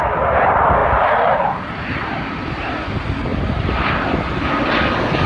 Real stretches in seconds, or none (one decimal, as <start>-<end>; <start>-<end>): 0.0-5.3

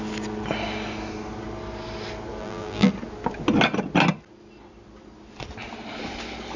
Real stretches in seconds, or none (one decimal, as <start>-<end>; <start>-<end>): 0.0-2.4; 2.9-6.6

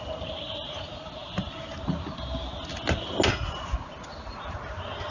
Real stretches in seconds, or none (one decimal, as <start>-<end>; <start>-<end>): 0.0-5.1